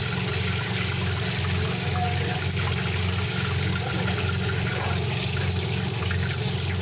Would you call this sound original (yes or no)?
yes